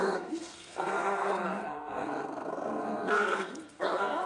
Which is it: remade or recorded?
remade